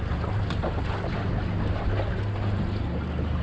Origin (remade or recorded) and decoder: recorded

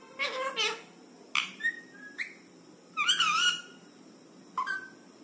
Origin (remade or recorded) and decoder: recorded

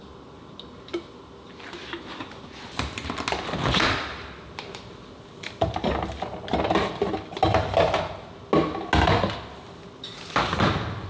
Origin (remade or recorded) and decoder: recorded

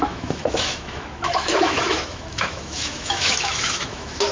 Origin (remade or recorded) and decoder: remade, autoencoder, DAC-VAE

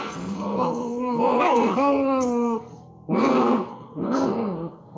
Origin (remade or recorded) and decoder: remade, codec, SNAC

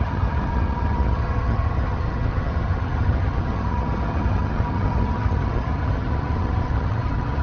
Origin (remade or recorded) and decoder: remade, vocoder, HiFi-GAN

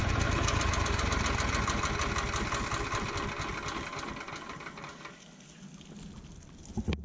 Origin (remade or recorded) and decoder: recorded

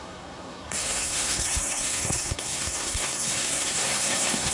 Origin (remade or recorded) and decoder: remade, codec, SNAC